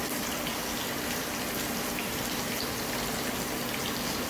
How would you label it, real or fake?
fake